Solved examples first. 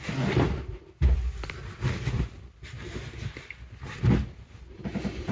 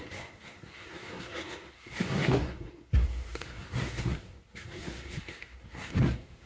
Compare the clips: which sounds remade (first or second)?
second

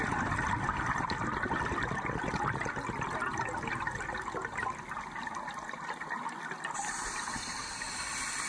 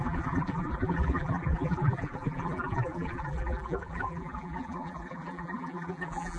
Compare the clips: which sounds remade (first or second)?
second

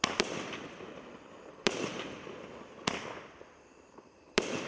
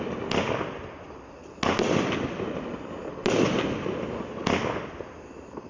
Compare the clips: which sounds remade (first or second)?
first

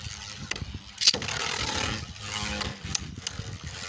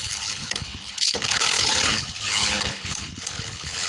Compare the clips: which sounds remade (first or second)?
second